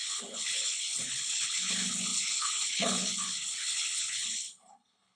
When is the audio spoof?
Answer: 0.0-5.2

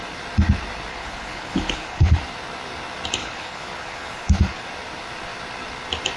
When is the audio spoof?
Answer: 0.9-2.2; 3.2-4.6

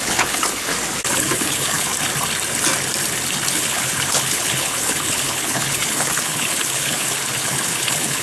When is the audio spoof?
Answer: 0.0-0.7; 1.2-1.9; 3.5-8.2

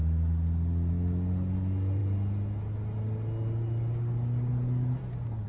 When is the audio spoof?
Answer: none

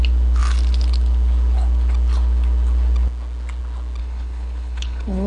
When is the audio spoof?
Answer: 4.0-5.3

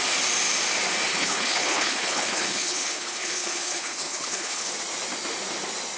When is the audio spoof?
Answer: 1.1-4.7

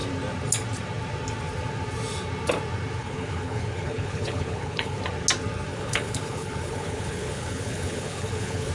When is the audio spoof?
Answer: 3.0-5.0; 5.7-8.7

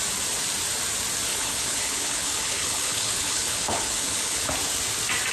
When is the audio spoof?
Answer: 1.3-4.5